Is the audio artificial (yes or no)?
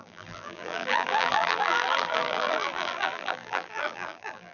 yes